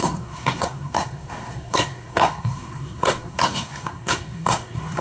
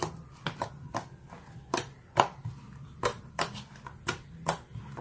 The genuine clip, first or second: second